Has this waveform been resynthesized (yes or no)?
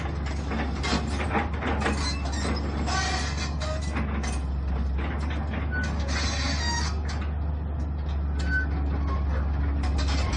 no